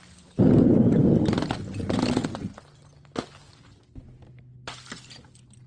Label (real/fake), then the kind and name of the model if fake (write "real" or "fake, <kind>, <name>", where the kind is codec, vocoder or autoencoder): real